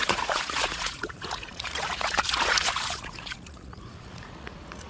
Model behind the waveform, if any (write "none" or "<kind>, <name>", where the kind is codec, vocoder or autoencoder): vocoder, Vocos